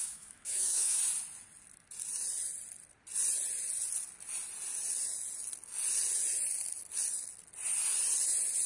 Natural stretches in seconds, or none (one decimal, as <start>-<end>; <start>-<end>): 1.0-8.7